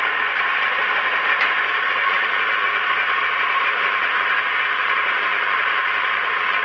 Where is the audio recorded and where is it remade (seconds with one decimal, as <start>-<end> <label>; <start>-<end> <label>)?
0.0-0.8 remade; 0.8-1.6 recorded; 1.6-2.8 remade; 2.8-3.6 recorded; 3.6-6.6 remade